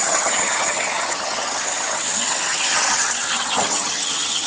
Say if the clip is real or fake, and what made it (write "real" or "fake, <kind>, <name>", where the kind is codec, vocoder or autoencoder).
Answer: fake, vocoder, HiFi-GAN